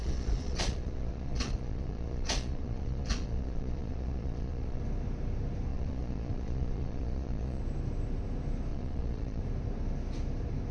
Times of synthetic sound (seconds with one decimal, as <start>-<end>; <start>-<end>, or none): 0.0-4.8; 5.7-7.6; 8.7-9.4